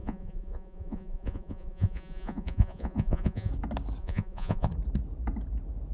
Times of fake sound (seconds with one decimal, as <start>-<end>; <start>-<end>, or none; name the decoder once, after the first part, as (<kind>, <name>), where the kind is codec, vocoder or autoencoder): 0.0-3.5 (vocoder, Vocos); 4.0-4.7